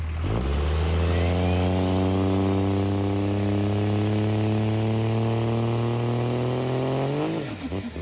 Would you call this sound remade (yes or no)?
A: no